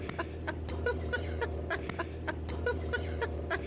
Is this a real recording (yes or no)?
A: no